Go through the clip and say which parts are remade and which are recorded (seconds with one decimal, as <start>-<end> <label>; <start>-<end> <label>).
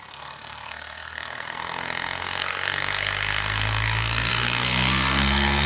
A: 0.0-5.7 remade